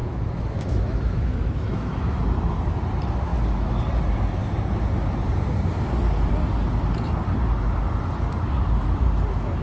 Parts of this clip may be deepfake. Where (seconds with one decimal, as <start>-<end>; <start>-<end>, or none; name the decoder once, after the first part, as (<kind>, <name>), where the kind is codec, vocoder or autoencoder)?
0.0-2.2 (autoencoder, DAC-VAE)

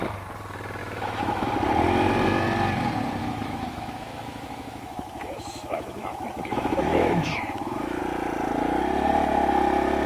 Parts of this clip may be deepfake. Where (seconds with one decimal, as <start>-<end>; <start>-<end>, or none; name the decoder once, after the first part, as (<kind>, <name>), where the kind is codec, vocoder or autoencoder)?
0.8-1.5 (autoencoder, DAC-VAE); 3.2-8.0

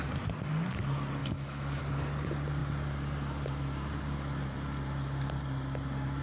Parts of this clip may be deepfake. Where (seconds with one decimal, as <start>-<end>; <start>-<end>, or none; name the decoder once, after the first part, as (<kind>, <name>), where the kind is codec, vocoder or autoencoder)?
1.2-1.8 (autoencoder, DAC-VAE)

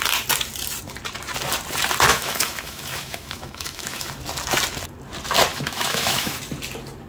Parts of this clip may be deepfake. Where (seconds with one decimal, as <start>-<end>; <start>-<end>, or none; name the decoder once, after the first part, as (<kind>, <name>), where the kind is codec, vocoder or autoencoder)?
2.1-4.1 (autoencoder, DAC-VAE); 5.5-6.4

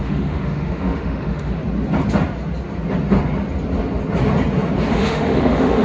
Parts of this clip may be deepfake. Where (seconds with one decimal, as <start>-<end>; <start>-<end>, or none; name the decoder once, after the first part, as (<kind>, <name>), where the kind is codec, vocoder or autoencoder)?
0.0-1.6 (autoencoder, DAC-VAE); 4.9-5.8

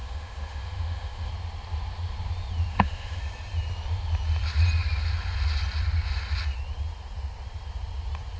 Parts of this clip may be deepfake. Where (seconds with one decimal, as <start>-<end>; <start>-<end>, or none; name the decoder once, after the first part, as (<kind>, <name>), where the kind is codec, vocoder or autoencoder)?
0.0-1.3 (autoencoder, DAC-VAE); 2.7-3.2

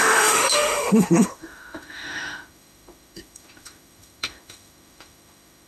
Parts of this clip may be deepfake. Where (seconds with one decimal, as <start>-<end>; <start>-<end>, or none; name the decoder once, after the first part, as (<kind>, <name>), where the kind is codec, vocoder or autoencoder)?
0.0-5.7 (autoencoder, DAC-VAE)